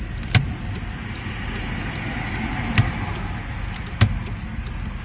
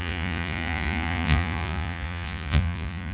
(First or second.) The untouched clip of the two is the first